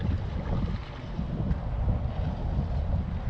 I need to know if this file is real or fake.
real